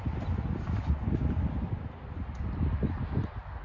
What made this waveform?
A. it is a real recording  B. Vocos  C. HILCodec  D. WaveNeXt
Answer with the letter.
A